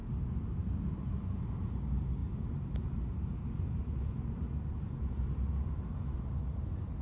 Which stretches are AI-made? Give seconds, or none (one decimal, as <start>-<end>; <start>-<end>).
none